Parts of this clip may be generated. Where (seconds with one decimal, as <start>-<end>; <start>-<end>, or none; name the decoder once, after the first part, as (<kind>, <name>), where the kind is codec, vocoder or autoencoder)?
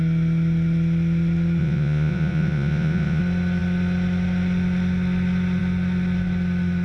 1.6-3.2 (vocoder, Vocos)